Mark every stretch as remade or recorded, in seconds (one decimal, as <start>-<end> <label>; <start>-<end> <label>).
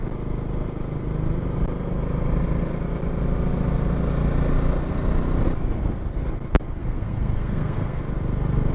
0.0-6.8 recorded; 6.8-8.0 remade; 8.0-8.7 recorded